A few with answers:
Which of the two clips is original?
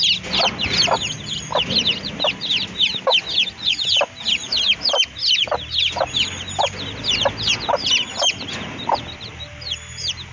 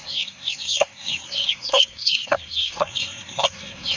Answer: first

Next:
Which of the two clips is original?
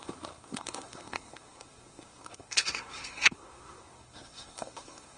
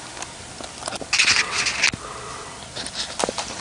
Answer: second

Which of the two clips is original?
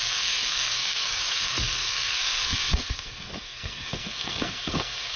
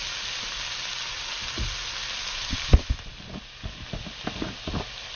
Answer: second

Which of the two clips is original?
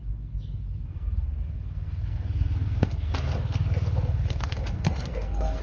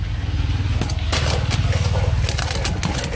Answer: second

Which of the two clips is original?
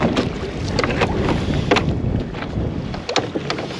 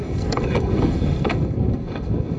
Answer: first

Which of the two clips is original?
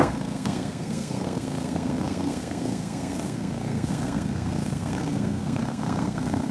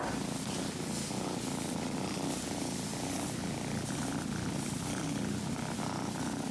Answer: second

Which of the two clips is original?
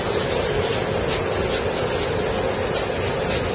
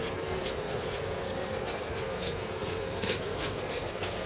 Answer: first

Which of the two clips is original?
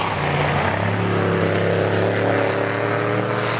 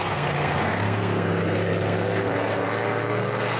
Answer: first